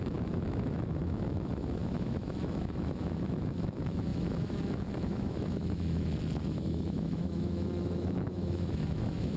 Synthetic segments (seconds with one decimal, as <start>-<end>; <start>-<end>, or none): 0.0-9.4